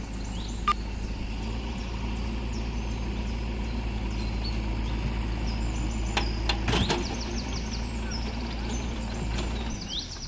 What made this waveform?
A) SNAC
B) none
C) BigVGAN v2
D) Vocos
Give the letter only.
B